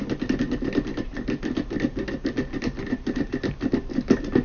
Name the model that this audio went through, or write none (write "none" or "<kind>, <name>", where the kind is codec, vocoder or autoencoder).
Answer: none